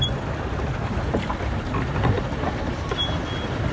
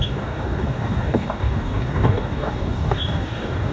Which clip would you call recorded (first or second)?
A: first